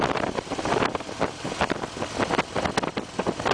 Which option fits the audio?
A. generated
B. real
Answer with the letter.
B